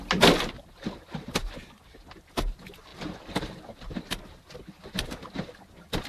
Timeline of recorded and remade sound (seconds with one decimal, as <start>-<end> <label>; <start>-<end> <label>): 0.0-2.9 recorded; 2.9-3.9 remade; 3.9-6.1 recorded